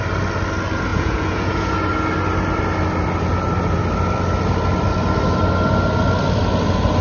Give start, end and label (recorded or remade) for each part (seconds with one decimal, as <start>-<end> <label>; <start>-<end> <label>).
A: 0.0-0.9 recorded; 0.9-1.8 remade; 1.8-7.0 recorded